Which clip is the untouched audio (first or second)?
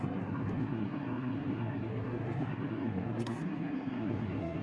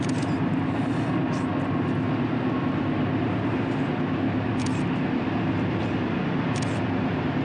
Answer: second